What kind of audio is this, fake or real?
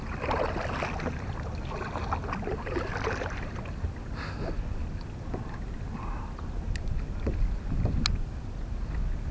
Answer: real